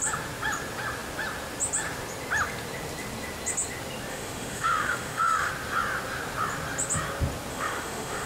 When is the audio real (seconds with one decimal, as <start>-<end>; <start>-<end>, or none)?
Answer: 0.0-4.1; 5.5-7.5